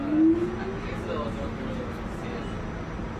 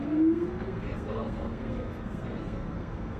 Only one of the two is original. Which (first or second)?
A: first